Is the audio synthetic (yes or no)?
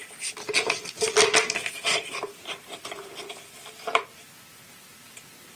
no